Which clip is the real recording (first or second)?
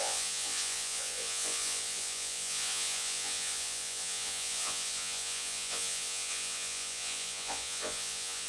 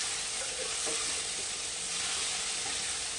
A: second